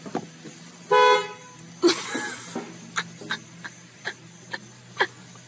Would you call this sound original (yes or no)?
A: yes